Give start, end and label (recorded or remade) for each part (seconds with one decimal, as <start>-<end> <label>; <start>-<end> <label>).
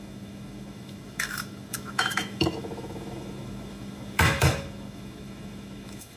0.0-6.2 remade